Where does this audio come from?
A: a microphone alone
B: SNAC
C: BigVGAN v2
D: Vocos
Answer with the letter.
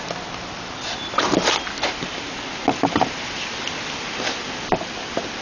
A